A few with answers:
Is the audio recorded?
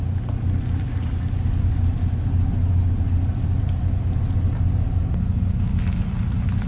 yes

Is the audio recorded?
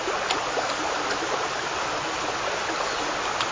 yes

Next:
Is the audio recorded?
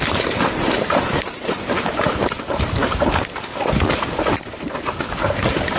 yes